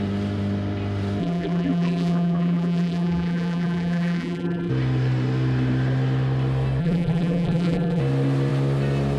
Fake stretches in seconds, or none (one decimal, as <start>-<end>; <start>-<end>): 1.2-4.7; 6.8-8.0